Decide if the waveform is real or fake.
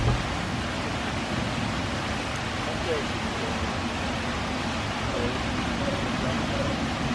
real